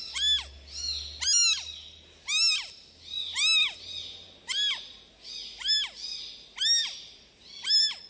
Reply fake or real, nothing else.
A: real